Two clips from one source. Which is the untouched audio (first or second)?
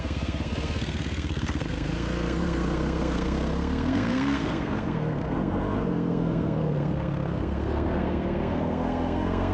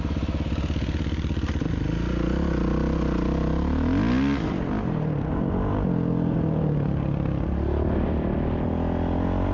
second